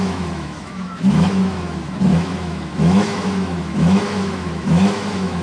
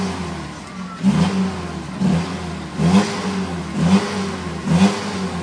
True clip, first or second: second